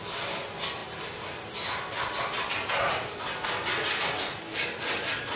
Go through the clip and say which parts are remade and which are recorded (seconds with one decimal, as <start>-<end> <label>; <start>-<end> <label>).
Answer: 0.0-4.5 recorded; 4.5-5.3 remade